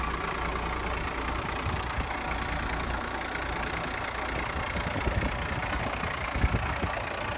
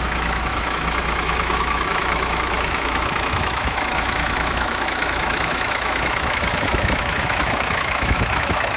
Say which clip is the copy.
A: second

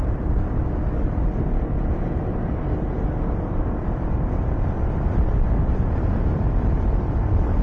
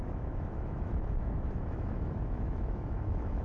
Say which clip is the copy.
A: second